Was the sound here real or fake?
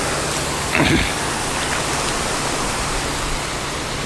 real